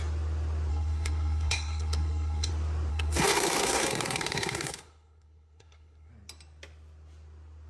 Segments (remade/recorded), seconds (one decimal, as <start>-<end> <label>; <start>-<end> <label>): 0.0-0.7 recorded; 0.7-2.5 remade; 2.5-2.9 recorded; 2.9-6.1 remade; 6.1-7.7 recorded